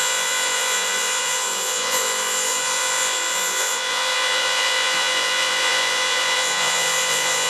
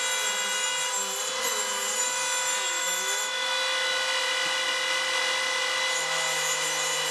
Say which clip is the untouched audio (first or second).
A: second